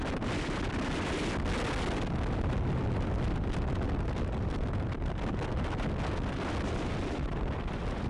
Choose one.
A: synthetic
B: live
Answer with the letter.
B